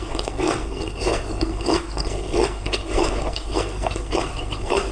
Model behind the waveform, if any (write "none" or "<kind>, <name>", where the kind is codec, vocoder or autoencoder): codec, SNAC